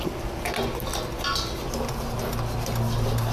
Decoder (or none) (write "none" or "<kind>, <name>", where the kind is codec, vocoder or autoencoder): none